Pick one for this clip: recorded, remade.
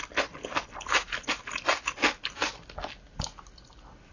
recorded